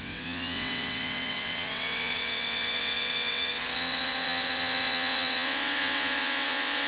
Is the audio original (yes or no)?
no